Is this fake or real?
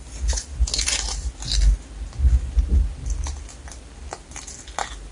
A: real